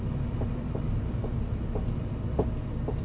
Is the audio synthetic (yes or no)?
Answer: no